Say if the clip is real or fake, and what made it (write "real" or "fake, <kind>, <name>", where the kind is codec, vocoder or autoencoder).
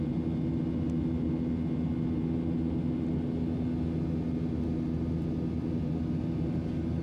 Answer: real